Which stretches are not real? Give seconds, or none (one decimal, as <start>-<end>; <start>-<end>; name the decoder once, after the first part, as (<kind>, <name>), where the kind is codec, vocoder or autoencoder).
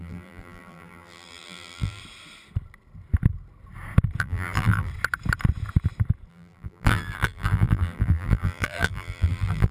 0.0-2.0 (vocoder, BigVGAN v2); 4.2-4.9; 6.3-9.7